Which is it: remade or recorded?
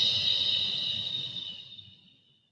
recorded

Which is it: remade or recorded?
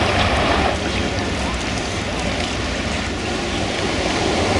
recorded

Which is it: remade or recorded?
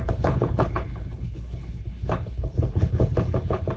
remade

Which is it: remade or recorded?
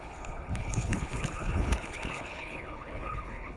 remade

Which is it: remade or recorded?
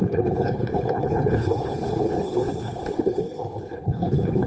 remade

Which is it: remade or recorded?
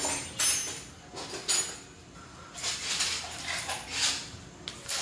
recorded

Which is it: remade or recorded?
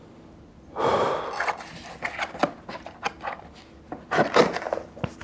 recorded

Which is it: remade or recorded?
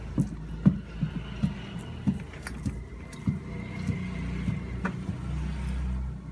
recorded